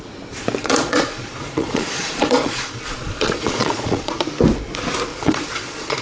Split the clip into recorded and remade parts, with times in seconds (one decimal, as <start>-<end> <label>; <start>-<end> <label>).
0.0-0.6 recorded; 0.6-4.2 remade; 4.2-5.1 recorded; 5.1-6.0 remade